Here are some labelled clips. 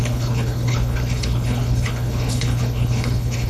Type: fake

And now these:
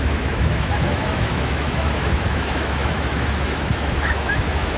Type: fake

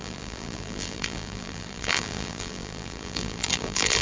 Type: fake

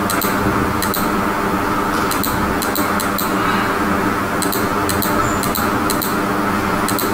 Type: real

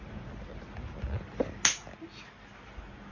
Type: real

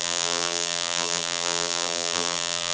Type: fake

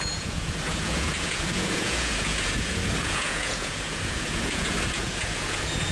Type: fake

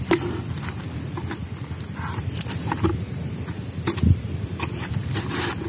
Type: real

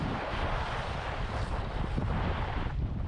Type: fake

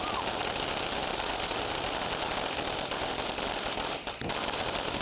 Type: real